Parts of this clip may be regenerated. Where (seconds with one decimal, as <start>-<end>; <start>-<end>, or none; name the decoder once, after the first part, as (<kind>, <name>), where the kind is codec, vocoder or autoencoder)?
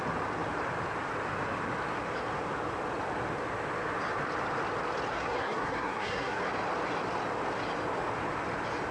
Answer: 5.1-6.4 (codec, SNAC)